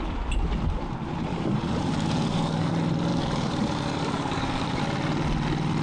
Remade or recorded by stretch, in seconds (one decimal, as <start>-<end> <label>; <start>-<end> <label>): 0.0-1.3 recorded; 1.3-2.7 remade; 2.7-3.1 recorded; 3.1-4.8 remade; 4.8-5.8 recorded